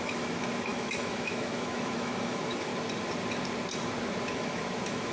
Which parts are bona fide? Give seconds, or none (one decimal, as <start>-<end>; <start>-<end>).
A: 2.7-4.3